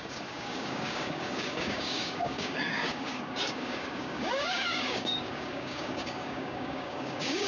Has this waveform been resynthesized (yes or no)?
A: yes